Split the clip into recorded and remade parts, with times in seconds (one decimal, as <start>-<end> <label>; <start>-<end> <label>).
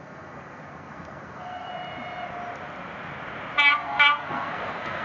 0.0-1.7 remade; 1.7-3.7 recorded; 3.7-5.0 remade